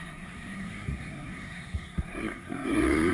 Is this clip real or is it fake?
fake